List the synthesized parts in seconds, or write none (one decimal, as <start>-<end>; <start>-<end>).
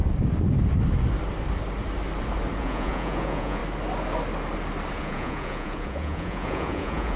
2.6-3.6; 4.9-7.2